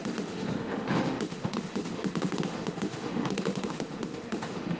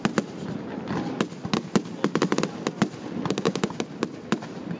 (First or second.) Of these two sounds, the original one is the second